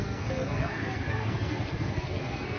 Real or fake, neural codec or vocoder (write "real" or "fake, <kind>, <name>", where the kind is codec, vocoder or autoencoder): fake, codec, SNAC